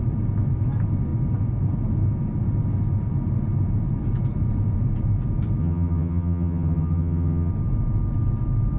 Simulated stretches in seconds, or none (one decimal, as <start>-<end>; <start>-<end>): 5.6-7.5